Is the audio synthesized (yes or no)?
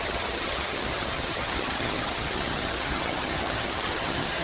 yes